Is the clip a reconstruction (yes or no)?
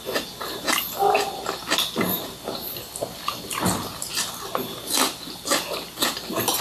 no